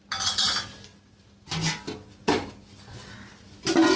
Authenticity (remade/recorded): recorded